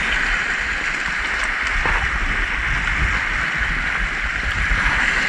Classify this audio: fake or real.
real